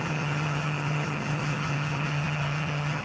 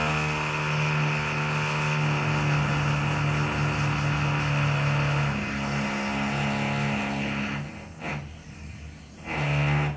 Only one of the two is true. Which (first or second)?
second